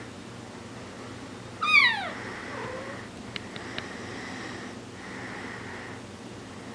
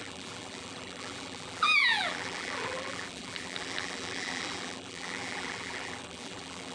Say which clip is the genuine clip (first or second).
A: first